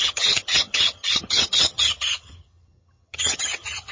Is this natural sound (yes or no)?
no